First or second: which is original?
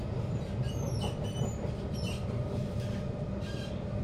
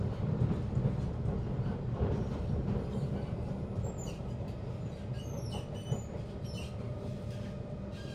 second